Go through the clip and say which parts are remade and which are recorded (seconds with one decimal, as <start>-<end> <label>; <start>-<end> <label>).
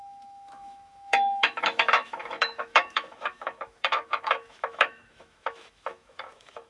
0.0-6.7 remade